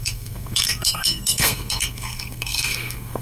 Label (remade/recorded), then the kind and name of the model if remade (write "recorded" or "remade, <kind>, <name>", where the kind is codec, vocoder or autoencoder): remade, codec, SNAC